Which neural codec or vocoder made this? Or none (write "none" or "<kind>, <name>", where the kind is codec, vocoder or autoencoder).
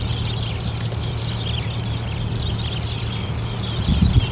none